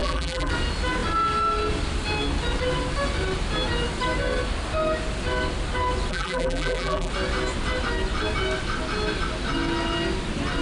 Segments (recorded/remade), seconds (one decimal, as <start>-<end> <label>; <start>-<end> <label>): 0.0-0.5 remade; 0.5-6.1 recorded; 6.1-7.1 remade; 7.1-10.6 recorded